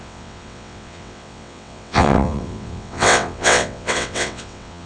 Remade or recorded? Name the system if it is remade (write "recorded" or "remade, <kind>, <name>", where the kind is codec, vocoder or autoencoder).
remade, vocoder, WaveNeXt